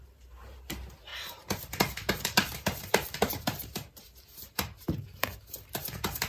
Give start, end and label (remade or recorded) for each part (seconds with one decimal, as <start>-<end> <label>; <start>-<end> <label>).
0.0-5.3 remade; 5.3-5.8 recorded; 5.8-6.3 remade